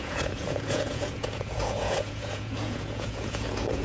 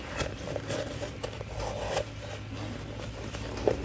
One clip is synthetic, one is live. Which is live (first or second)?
second